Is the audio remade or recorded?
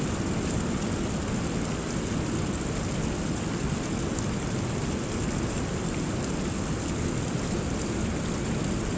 recorded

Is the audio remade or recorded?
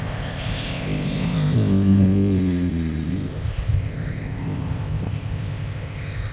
remade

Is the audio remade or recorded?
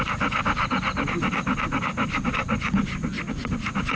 recorded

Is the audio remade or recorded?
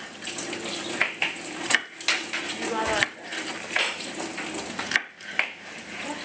recorded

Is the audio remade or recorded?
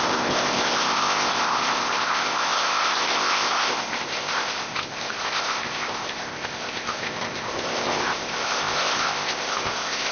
remade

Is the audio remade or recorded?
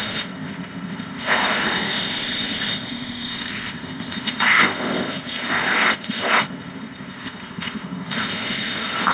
remade